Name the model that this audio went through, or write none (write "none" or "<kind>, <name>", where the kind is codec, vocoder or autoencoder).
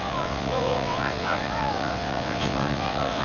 vocoder, WaveNeXt